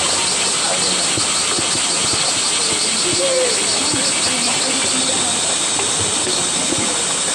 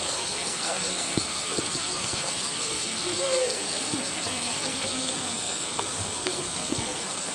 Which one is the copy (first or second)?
second